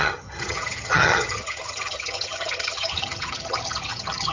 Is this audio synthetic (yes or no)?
yes